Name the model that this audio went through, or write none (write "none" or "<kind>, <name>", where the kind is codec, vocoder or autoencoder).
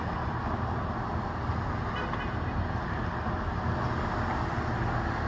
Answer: none